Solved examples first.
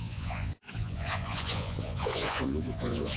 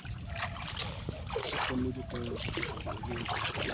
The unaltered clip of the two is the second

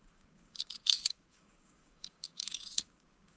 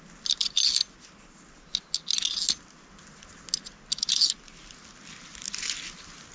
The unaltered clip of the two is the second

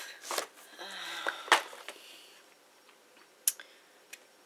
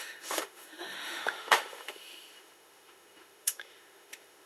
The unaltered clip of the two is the first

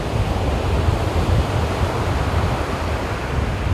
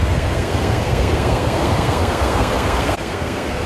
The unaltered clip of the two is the first